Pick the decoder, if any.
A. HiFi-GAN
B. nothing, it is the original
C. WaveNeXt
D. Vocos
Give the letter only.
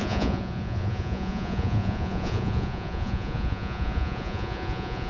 D